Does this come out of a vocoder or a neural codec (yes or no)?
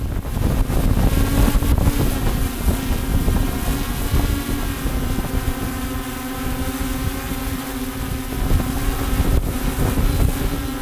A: no